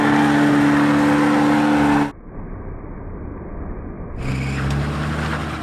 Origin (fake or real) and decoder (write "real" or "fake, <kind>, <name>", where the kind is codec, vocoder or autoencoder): real